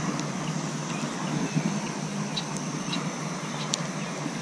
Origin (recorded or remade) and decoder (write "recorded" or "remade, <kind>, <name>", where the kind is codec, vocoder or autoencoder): recorded